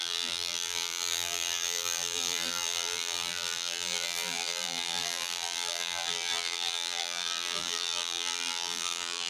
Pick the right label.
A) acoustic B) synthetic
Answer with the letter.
B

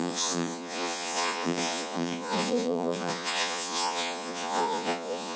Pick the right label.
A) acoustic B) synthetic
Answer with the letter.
B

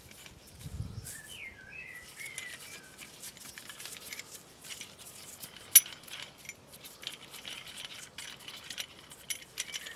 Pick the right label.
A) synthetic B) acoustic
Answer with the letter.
B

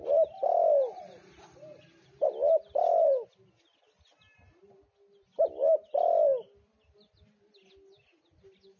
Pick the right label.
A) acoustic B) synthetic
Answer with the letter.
A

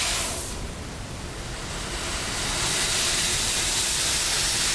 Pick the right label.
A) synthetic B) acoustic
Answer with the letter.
B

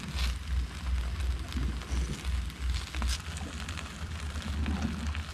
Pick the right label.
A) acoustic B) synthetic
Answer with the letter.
A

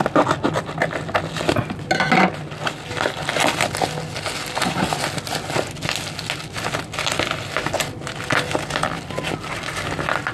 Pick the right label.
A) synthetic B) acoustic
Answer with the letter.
B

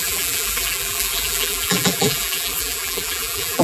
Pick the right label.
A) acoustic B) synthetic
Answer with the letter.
B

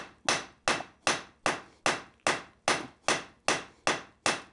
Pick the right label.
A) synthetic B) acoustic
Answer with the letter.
B